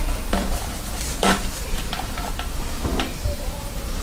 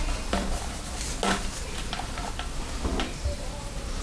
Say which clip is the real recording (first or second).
second